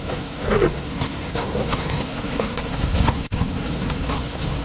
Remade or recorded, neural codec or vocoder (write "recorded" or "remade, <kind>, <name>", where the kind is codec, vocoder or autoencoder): remade, codec, SNAC